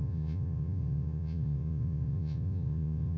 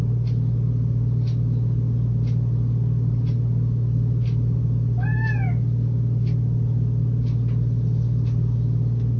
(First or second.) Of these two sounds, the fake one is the first